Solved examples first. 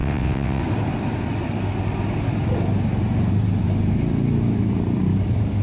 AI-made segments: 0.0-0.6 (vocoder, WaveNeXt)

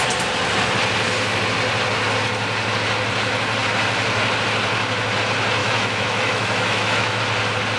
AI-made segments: 5.6-7.2 (autoencoder, DAC-VAE)

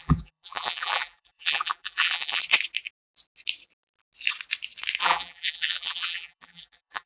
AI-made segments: 0.0-2.4 (vocoder, BigVGAN v2); 5.0-7.1

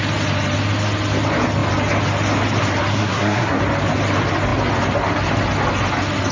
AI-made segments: 2.9-3.6 (codec, SNAC)

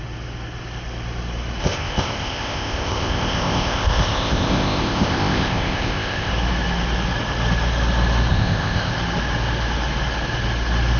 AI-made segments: 1.6-6.3 (codec, ZipCodec); 8.3-8.9

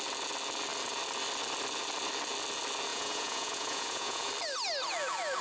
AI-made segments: 2.9-4.3 (vocoder, Vocos)

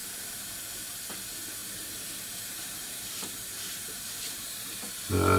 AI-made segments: 0.0-0.6 (vocoder, BigVGAN v2); 1.6-4.8